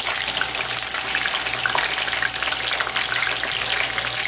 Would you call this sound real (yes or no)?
yes